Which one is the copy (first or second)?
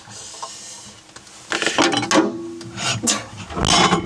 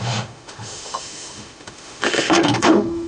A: second